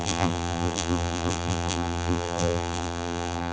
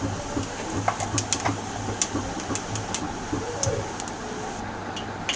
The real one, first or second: second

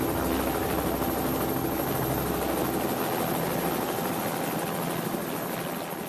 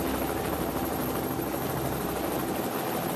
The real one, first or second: first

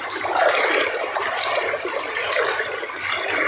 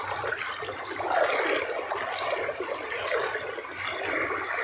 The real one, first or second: second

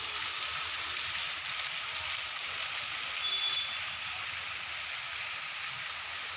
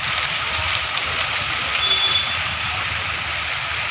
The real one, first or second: first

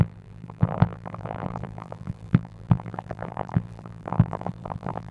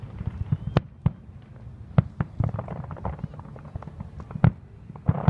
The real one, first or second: second